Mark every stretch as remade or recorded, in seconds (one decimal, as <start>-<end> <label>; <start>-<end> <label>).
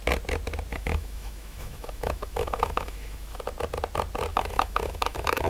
0.0-0.7 recorded; 0.7-3.4 remade; 3.4-4.3 recorded; 4.3-5.5 remade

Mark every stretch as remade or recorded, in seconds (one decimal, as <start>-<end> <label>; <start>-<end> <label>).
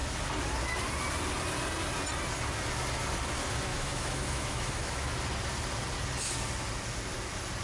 0.0-3.7 recorded; 3.7-5.1 remade; 5.1-7.6 recorded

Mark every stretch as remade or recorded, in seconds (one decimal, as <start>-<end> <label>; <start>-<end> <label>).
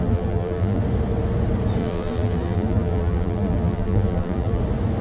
0.0-0.8 remade; 0.8-1.8 recorded; 1.8-4.6 remade; 4.6-5.0 recorded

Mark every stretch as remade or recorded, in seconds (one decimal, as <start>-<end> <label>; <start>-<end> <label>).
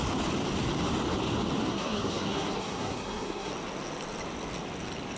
0.0-1.6 recorded; 1.6-3.5 remade; 3.5-5.2 recorded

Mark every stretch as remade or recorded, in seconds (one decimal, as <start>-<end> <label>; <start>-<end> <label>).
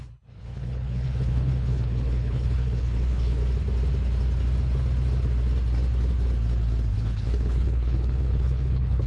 0.0-3.4 remade; 3.4-6.9 recorded; 6.9-9.1 remade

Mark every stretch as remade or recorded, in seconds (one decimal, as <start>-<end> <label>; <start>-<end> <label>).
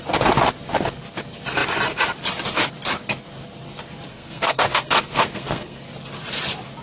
0.0-4.1 recorded; 4.1-5.8 remade; 5.8-6.8 recorded